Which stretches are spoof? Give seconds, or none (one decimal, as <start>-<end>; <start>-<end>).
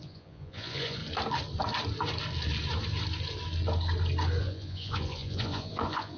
0.0-1.0; 4.4-6.2